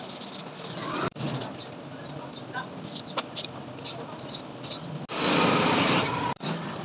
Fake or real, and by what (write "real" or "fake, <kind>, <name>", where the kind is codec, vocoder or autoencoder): real